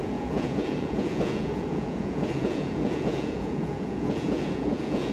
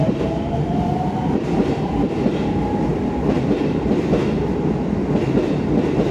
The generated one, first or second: first